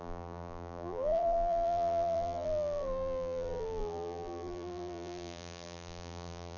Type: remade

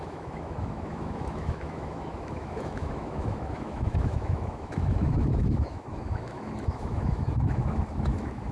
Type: remade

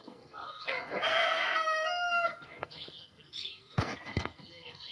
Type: remade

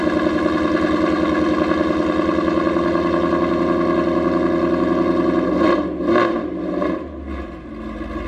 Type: recorded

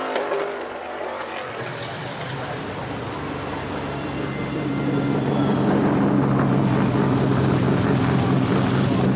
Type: recorded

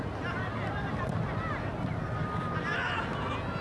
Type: recorded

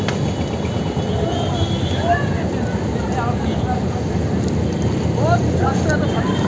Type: recorded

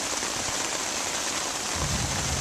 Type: recorded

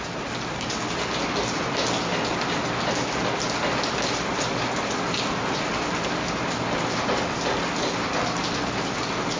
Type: recorded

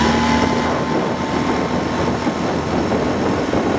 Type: recorded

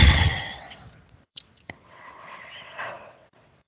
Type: remade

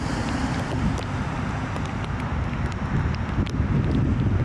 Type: recorded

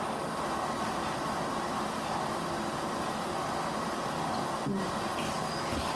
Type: recorded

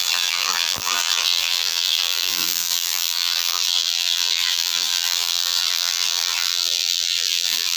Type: remade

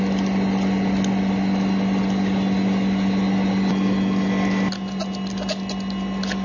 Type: recorded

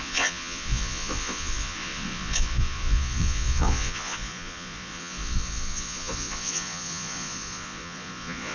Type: remade